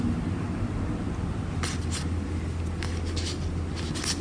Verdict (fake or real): real